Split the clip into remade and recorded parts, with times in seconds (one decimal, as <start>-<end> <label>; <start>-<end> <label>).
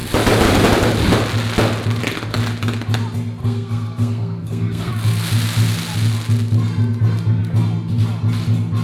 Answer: 0.0-3.4 recorded; 3.4-4.9 remade; 4.9-8.8 recorded